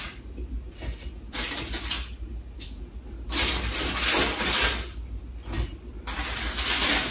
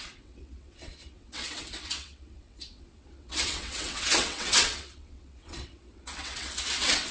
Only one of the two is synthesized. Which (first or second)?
second